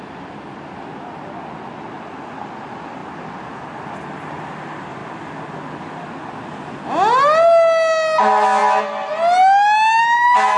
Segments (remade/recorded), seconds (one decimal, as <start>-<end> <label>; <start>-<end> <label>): 0.0-10.6 recorded